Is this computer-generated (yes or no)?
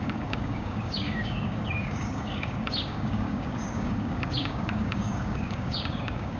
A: yes